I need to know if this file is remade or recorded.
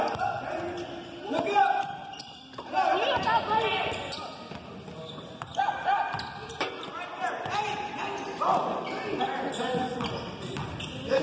recorded